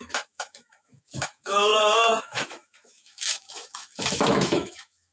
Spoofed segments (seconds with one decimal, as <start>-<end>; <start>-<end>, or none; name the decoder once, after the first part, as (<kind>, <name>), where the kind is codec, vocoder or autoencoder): 0.0-1.7 (autoencoder, DAC-VAE); 2.2-5.1